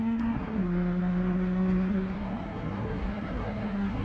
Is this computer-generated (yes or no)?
yes